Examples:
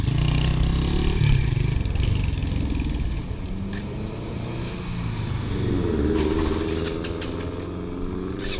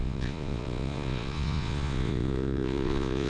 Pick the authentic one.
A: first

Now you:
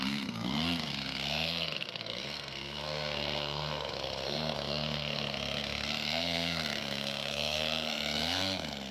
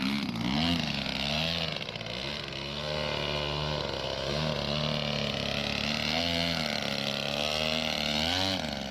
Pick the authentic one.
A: second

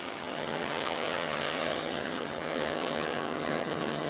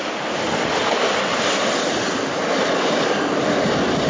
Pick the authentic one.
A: second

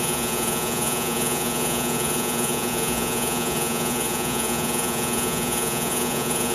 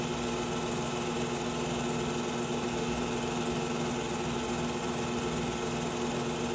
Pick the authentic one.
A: second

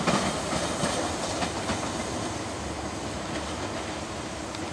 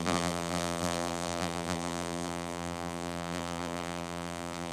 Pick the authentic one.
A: first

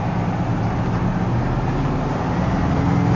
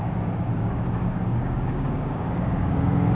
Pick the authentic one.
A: first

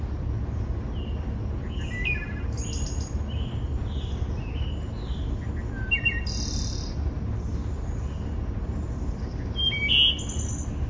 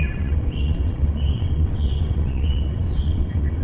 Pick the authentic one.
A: first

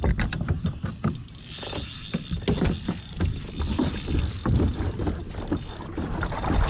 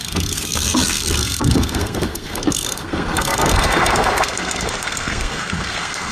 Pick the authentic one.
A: first